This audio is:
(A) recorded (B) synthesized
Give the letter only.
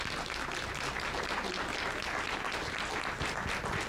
A